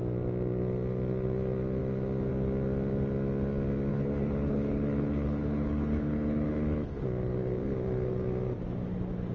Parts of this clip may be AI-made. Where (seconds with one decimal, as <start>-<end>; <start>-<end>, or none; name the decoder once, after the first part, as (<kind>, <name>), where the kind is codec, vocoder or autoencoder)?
3.9-7.0 (codec, HILCodec)